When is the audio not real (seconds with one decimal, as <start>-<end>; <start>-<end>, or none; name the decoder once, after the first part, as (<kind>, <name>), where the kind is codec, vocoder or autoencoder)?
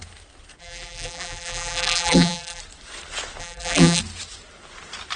0.6-2.6 (vocoder, BigVGAN v2); 3.4-4.0